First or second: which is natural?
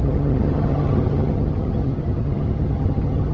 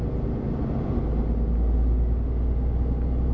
second